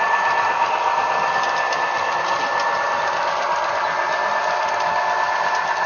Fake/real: real